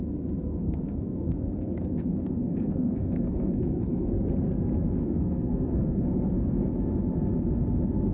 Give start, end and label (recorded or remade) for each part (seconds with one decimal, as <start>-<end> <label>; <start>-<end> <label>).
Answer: 0.0-0.5 recorded; 0.5-4.1 remade; 4.1-5.0 recorded; 5.0-6.7 remade; 6.7-8.1 recorded